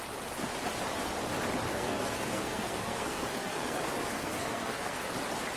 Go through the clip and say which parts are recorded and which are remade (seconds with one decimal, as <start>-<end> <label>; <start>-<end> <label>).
0.0-1.7 recorded; 1.7-5.1 remade; 5.1-5.6 recorded